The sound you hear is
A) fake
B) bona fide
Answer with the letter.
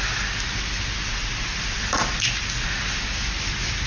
B